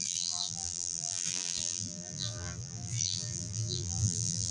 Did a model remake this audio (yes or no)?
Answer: yes